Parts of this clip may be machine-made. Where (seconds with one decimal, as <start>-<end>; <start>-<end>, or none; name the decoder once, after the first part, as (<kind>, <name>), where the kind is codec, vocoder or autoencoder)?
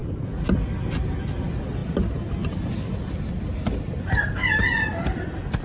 none